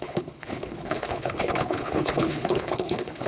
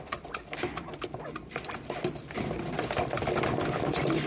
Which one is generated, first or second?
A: first